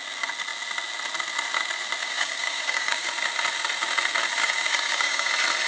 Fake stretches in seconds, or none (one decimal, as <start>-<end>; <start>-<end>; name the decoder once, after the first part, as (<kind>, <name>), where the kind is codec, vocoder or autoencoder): 2.0-3.1 (codec, DAC); 4.4-5.3